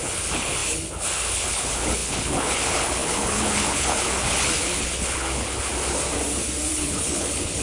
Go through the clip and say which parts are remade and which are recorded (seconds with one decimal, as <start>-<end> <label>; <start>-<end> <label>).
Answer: 0.0-5.7 remade; 5.7-6.7 recorded; 6.7-7.6 remade